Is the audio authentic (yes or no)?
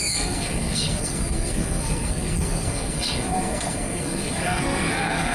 no